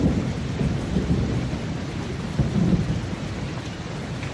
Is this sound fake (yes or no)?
no